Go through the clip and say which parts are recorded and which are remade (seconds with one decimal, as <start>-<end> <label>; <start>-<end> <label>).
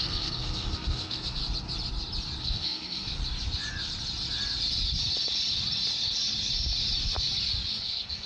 0.0-1.4 remade; 1.4-2.4 recorded; 2.4-3.2 remade; 3.2-7.8 recorded; 7.8-8.3 remade